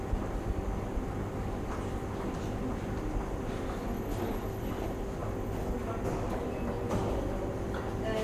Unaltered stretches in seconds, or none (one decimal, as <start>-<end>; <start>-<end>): 0.0-8.2